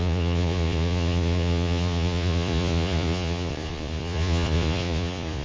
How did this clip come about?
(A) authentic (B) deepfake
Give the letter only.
B